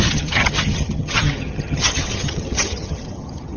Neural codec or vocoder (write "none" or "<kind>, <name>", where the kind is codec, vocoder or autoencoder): vocoder, HiFi-GAN